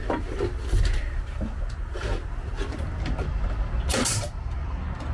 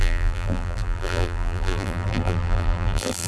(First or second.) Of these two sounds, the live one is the first